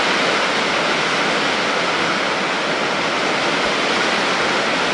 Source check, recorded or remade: recorded